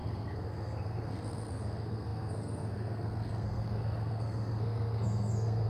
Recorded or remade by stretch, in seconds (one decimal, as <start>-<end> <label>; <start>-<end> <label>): 0.0-5.7 remade